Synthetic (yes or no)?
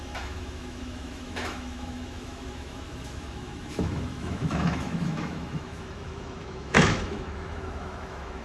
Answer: yes